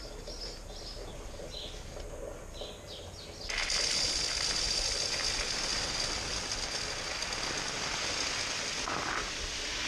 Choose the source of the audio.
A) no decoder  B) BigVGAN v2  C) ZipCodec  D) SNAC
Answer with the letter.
A